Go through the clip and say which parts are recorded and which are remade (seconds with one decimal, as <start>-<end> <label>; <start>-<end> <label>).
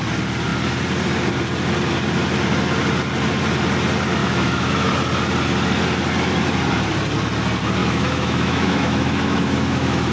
0.0-4.2 recorded; 4.2-4.9 remade; 4.9-7.8 recorded; 7.8-10.1 remade